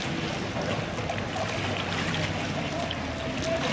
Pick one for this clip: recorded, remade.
recorded